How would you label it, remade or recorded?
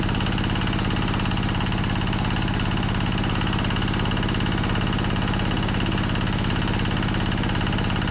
recorded